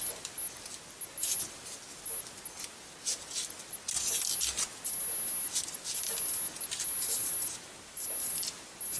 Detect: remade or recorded recorded